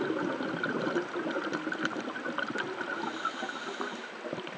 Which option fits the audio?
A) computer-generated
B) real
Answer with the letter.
B